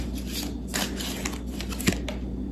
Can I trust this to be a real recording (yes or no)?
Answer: yes